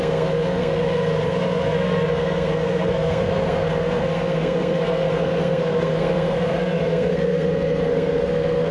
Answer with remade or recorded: remade